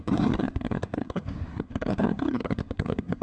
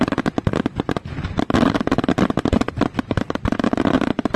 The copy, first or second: first